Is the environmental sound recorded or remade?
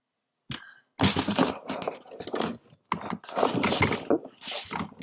recorded